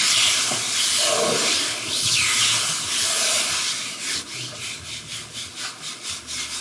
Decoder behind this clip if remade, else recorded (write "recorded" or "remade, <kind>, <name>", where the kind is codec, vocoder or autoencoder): recorded